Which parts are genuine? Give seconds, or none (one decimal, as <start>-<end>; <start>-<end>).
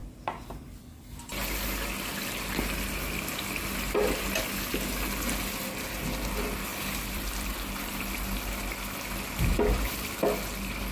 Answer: 0.8-6.7; 8.0-10.9